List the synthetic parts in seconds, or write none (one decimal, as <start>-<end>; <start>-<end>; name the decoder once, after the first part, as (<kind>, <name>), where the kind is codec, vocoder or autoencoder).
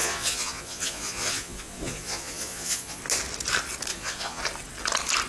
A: 0.0-3.0 (vocoder, Vocos); 3.9-4.4